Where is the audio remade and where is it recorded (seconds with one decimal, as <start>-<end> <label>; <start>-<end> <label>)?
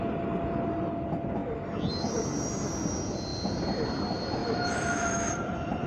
0.0-4.4 recorded; 4.4-5.3 remade; 5.3-5.9 recorded